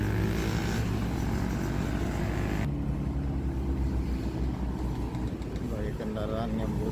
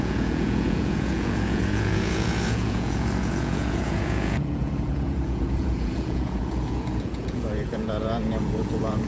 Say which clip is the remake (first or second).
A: second